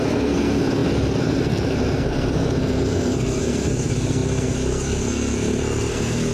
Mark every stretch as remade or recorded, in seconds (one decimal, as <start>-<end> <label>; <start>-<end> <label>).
0.0-6.3 remade